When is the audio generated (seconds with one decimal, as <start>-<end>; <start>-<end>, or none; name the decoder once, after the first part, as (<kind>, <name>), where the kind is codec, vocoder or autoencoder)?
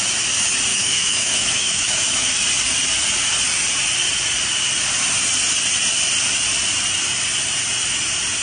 0.7-2.4 (autoencoder, DAC-VAE)